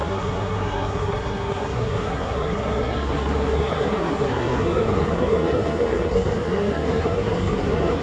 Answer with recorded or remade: remade